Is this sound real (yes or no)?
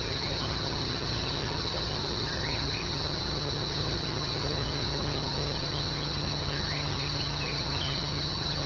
no